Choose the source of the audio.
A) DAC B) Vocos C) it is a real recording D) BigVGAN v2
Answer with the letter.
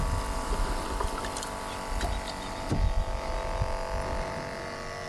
C